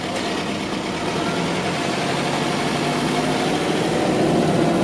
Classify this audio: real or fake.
real